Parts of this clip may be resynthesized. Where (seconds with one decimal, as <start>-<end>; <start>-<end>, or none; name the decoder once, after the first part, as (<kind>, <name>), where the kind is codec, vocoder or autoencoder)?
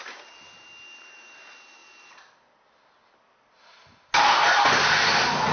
none